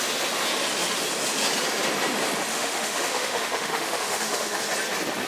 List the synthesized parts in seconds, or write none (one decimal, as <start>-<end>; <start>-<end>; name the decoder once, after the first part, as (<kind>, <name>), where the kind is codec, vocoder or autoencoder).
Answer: 2.5-4.6 (autoencoder, DAC-VAE)

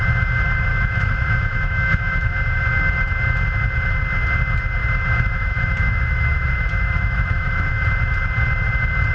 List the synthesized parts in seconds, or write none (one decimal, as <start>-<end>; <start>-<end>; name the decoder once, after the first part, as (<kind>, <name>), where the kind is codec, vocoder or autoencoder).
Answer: 0.7-2.6 (autoencoder, DAC-VAE); 4.8-7.7

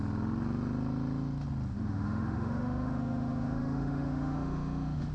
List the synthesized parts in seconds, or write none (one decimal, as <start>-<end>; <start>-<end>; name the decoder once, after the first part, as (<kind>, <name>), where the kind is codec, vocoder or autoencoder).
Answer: 1.7-5.1 (autoencoder, DAC-VAE)

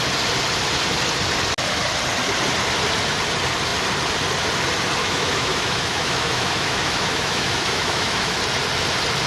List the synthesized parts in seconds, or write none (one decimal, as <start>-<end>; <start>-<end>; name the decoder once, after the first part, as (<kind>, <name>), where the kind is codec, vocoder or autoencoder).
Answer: 5.0-8.4 (autoencoder, DAC-VAE)

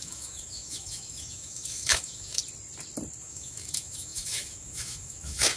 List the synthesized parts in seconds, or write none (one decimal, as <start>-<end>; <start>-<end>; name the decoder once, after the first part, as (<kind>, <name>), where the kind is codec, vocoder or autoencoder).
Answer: 0.0-2.4 (autoencoder, DAC-VAE); 3.2-5.6

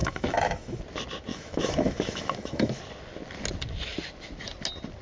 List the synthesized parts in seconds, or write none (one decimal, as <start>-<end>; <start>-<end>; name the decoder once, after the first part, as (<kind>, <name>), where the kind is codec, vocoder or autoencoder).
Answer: 0.0-0.8 (autoencoder, DAC-VAE); 1.3-2.8

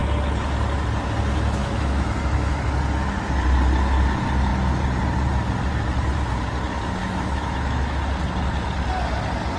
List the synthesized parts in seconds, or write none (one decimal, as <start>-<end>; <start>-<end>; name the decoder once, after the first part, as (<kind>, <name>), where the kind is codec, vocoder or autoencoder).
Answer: 1.6-2.6 (autoencoder, DAC-VAE); 7.0-8.0

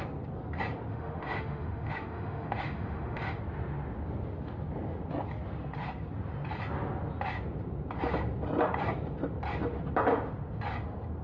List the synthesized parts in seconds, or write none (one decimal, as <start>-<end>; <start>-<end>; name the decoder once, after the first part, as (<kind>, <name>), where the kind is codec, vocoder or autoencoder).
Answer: 0.9-3.4 (autoencoder, DAC-VAE)